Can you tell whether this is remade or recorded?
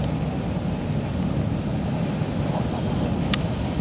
recorded